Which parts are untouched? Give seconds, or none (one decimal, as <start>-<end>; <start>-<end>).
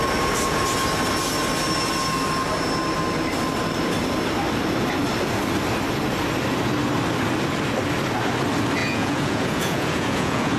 0.0-8.8